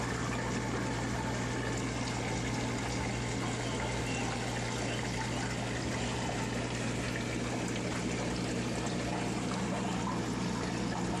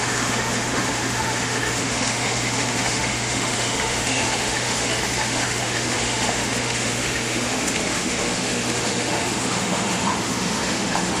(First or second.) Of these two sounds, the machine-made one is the second